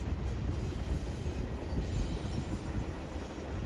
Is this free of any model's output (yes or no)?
yes